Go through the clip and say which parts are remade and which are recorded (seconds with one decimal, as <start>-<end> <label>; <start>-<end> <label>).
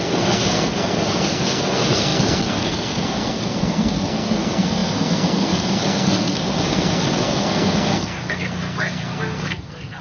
0.0-10.0 remade